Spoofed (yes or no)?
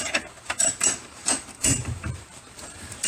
yes